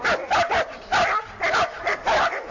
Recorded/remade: recorded